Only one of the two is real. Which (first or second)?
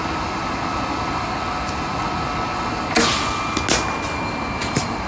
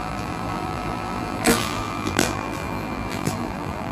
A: first